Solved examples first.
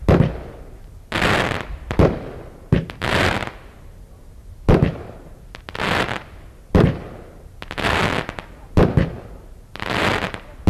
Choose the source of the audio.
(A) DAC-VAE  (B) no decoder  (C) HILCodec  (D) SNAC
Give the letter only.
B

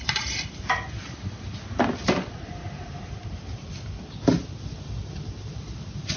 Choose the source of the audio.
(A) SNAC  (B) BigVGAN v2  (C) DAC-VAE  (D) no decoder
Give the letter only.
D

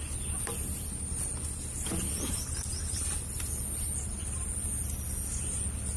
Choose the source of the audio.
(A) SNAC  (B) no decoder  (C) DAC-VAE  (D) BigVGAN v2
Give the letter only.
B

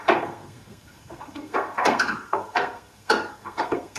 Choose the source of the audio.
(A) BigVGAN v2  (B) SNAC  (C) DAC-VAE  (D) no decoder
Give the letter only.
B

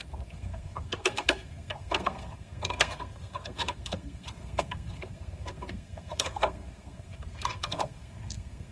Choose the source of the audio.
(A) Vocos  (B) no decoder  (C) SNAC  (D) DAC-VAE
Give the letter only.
C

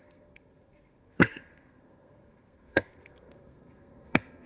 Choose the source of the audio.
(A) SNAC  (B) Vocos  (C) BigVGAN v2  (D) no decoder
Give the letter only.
A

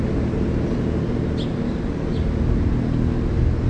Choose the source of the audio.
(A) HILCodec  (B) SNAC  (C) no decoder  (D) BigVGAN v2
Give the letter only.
C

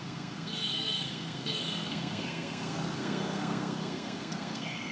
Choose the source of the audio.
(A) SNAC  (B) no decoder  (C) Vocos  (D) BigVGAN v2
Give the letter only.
A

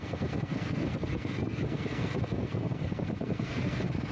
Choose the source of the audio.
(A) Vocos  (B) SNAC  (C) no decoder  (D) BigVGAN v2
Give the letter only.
B